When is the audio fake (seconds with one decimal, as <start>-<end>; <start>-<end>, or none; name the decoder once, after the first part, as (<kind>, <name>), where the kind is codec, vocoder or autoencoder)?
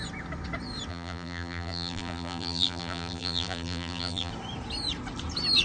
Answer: 0.9-4.3 (vocoder, BigVGAN v2)